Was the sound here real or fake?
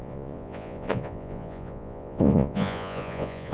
fake